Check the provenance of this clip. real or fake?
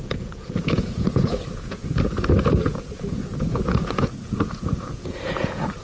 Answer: fake